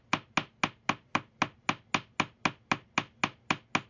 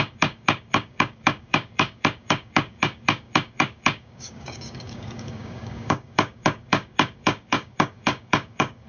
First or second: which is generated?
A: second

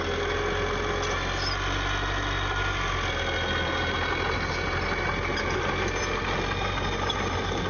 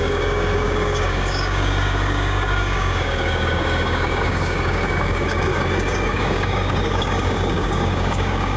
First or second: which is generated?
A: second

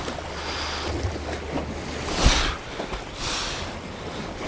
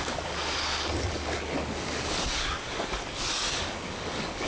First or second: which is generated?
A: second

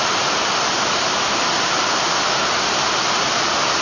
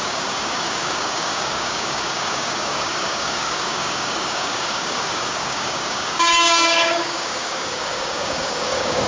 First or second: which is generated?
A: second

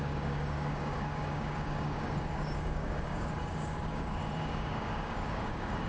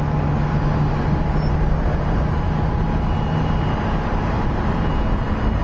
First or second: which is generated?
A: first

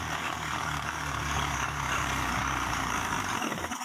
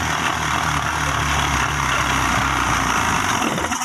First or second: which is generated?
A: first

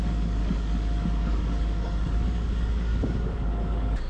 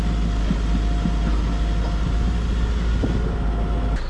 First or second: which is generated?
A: first